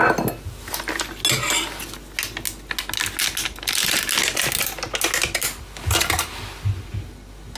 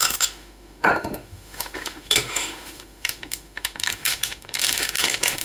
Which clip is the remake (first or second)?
second